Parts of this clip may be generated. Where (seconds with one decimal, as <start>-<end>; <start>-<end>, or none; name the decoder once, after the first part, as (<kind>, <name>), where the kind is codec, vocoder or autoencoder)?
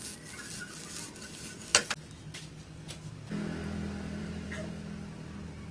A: 4.2-4.8 (vocoder, BigVGAN v2)